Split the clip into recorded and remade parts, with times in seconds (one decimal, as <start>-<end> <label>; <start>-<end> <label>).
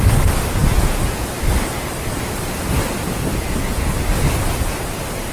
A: 0.0-0.6 recorded; 0.6-1.3 remade; 1.3-3.4 recorded; 3.4-3.9 remade; 3.9-5.3 recorded